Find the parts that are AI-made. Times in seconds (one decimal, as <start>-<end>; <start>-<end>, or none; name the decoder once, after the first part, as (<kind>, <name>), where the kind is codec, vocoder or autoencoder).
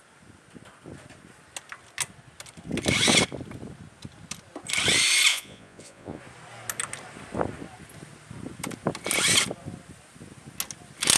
5.3-6.2 (vocoder, Vocos)